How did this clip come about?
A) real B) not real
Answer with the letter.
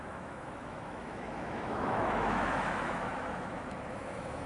B